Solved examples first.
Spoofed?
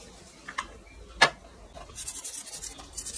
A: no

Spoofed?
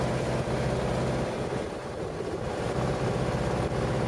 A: no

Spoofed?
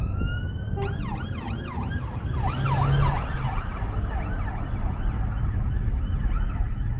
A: no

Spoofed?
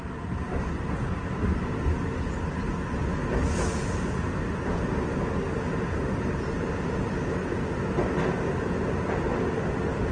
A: no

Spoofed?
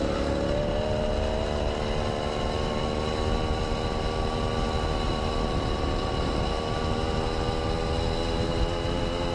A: no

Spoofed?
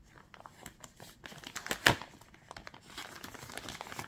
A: no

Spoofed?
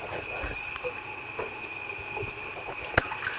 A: no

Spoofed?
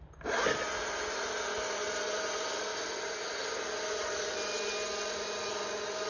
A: no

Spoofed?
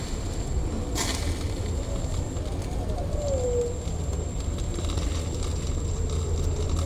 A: no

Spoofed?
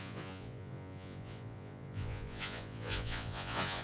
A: yes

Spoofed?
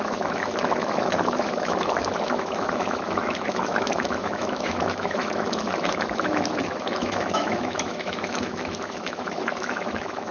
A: yes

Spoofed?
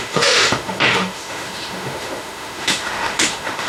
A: yes